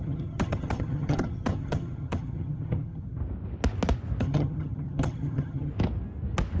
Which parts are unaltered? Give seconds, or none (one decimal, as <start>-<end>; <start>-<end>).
3.2-4.2; 5.7-6.6